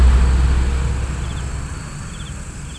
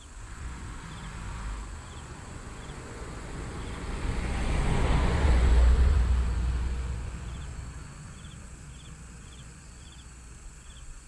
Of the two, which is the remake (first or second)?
second